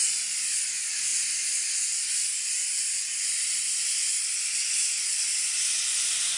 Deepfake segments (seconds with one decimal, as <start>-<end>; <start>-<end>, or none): none